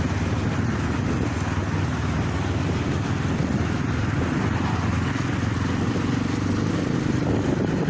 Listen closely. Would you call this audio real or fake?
real